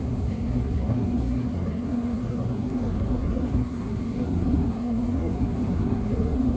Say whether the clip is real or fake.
fake